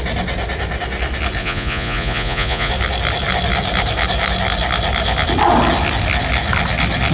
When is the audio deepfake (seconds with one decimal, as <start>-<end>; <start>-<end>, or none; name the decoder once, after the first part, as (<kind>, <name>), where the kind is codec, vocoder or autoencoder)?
1.4-2.7 (vocoder, Vocos)